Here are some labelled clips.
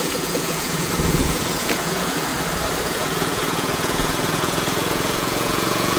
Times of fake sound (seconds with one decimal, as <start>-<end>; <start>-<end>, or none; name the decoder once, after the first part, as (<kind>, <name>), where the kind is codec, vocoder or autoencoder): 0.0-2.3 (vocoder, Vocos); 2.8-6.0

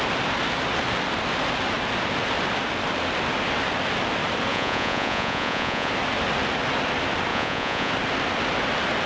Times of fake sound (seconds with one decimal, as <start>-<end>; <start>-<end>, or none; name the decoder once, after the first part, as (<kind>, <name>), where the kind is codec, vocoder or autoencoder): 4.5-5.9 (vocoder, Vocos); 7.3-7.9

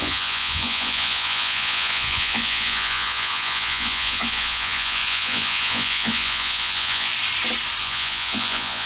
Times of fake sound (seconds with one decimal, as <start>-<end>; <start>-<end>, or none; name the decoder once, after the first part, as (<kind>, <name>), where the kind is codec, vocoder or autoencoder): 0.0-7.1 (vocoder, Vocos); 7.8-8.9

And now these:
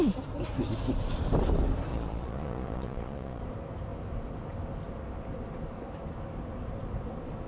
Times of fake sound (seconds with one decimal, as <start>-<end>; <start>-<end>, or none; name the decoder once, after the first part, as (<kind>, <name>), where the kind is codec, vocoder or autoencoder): 1.9-3.4 (vocoder, Vocos)